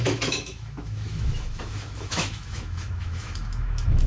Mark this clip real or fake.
fake